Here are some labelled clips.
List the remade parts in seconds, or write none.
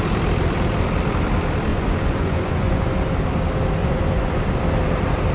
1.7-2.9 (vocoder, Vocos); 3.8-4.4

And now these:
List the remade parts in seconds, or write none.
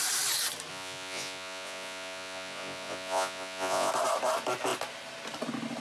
0.7-3.9 (vocoder, Vocos)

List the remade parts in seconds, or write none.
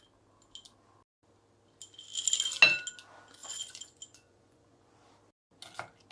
3.4-5.0 (vocoder, Vocos)